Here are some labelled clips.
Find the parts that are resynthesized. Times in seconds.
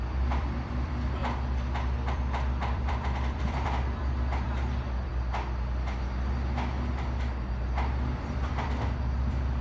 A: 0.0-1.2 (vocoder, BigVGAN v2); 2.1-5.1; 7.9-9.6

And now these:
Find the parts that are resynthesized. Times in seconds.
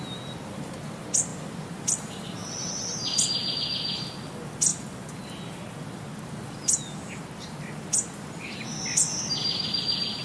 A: none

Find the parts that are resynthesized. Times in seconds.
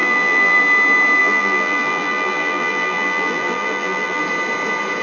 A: 0.0-0.6 (vocoder, BigVGAN v2); 1.2-4.2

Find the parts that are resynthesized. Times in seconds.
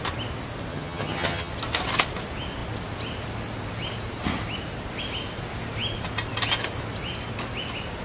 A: 0.7-1.5 (vocoder, HiFi-GAN)